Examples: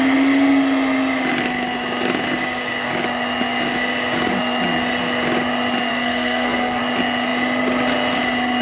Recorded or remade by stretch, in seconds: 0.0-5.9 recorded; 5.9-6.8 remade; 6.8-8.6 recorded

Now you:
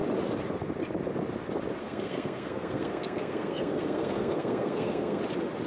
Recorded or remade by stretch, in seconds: 0.0-1.8 recorded; 1.8-5.2 remade; 5.2-5.7 recorded